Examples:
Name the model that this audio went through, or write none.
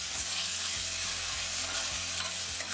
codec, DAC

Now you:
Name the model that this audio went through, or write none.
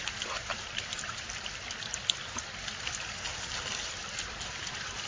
none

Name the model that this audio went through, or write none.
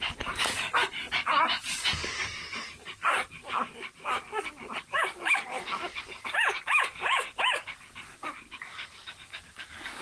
codec, DAC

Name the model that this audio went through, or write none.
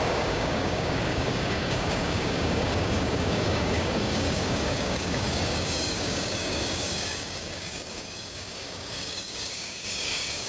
codec, DAC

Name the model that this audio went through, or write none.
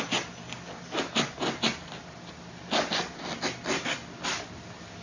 none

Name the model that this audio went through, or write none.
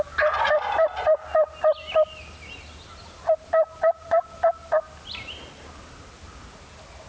none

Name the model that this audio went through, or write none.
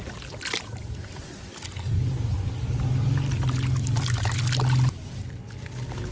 none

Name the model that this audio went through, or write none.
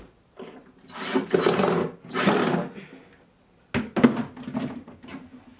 none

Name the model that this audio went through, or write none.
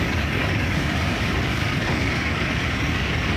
codec, DAC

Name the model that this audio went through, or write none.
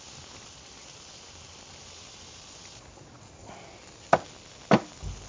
none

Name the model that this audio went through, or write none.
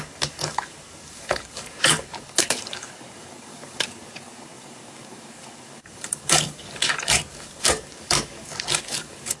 codec, DAC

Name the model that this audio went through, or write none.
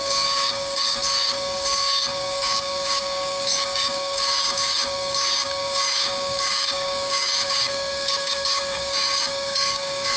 codec, DAC